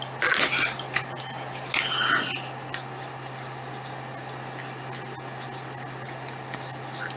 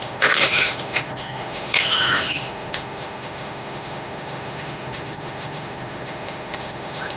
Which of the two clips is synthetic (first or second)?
second